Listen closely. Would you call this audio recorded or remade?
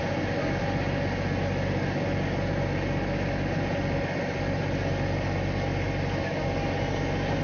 recorded